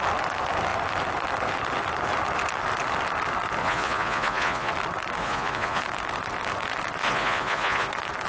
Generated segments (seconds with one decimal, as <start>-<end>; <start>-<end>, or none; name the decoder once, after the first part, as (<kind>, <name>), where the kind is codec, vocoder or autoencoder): 3.6-4.7 (vocoder, Vocos); 5.2-5.8; 7.0-7.9